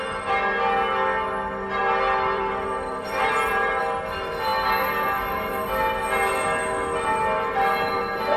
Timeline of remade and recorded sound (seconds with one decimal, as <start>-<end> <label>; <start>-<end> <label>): 0.0-1.8 recorded; 1.8-3.8 remade; 3.8-8.4 recorded